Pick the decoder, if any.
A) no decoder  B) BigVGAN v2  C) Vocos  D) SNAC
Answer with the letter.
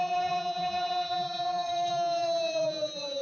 B